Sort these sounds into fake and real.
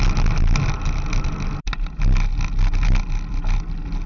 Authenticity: real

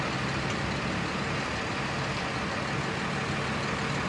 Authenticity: real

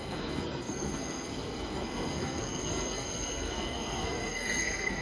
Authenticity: fake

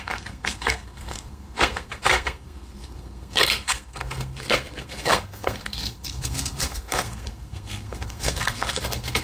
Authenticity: fake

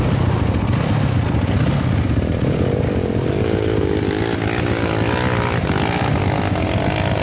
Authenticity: real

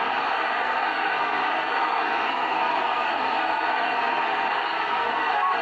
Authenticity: fake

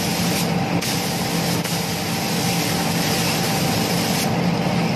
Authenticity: real